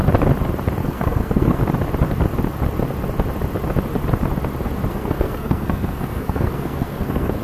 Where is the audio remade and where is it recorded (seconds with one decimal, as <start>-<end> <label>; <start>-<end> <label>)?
0.0-0.8 recorded; 0.8-1.6 remade; 1.6-4.9 recorded; 4.9-7.4 remade